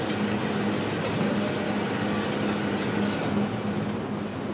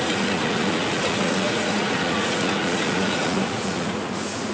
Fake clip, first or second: second